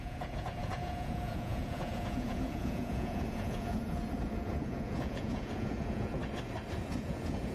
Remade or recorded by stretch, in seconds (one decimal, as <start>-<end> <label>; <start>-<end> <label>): 0.0-6.2 remade; 6.2-6.8 recorded; 6.8-7.5 remade